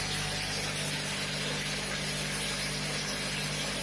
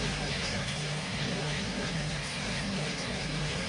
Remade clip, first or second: second